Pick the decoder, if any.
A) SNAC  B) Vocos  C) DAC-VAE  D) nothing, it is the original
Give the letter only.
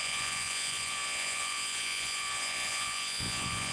B